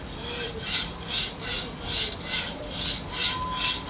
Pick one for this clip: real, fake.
real